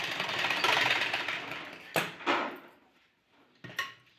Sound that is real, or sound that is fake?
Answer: fake